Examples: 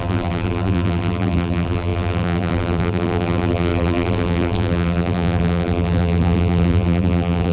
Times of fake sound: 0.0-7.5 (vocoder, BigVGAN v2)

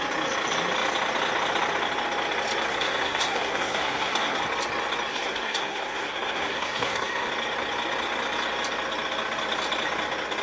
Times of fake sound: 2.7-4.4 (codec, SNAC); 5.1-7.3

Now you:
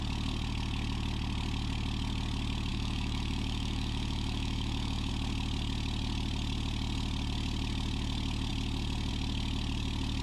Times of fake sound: 2.7-5.1 (autoencoder, DAC-VAE)

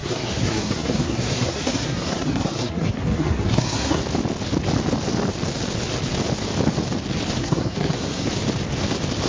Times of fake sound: 0.0-4.0 (codec, SNAC); 7.4-8.3

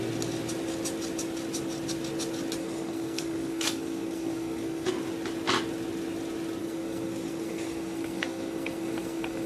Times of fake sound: 2.6-4.9 (codec, SNAC); 6.6-9.5